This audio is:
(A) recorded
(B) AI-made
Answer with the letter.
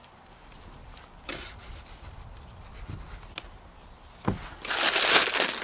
A